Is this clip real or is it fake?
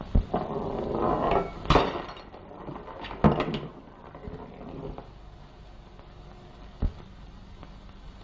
real